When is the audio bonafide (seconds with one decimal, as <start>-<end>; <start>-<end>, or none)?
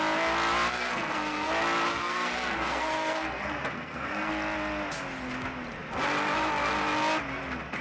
0.0-0.7; 1.5-1.9; 4.3-7.8